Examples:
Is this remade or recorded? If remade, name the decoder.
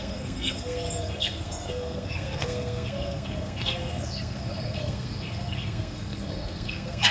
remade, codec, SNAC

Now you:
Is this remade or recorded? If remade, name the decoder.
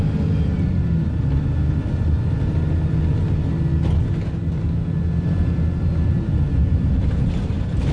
recorded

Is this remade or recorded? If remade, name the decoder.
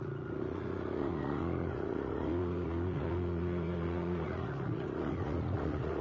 remade, vocoder, Vocos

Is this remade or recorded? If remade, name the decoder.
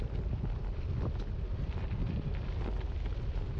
recorded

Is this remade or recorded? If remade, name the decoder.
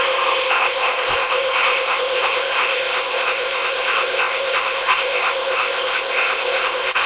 remade, codec, ZipCodec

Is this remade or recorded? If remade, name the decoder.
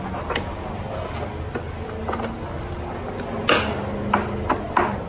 recorded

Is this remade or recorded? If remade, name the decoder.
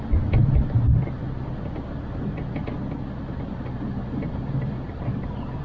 recorded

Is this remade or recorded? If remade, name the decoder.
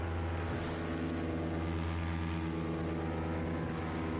recorded